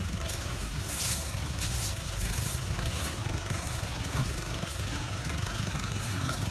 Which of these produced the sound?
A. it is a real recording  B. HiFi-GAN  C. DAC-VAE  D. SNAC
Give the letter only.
D